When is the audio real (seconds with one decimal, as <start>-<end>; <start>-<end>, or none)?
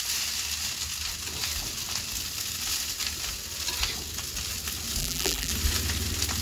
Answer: 0.0-5.0; 5.5-6.4